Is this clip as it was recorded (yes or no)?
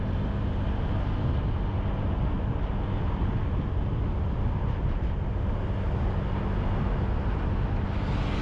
yes